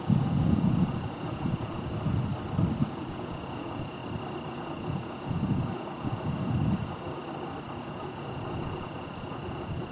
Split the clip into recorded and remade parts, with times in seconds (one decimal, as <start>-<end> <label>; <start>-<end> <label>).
0.0-2.3 remade; 2.3-2.8 recorded; 2.8-4.0 remade; 4.0-4.5 recorded; 4.5-7.2 remade; 7.2-7.8 recorded; 7.8-9.9 remade